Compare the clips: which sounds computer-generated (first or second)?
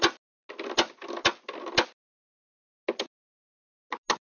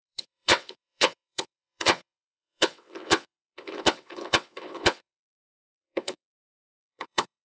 second